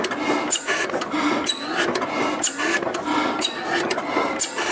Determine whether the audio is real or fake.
real